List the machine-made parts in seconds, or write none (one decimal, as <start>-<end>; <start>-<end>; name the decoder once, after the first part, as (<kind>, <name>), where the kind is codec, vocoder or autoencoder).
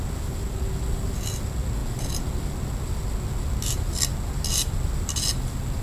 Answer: none